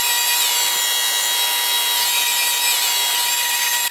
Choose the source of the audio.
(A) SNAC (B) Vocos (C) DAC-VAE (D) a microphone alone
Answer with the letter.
D